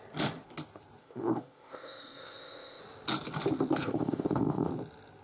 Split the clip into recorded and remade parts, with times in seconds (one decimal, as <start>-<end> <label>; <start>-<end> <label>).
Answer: 0.0-1.0 recorded; 1.0-2.8 remade; 2.8-3.8 recorded; 3.8-4.7 remade; 4.7-5.2 recorded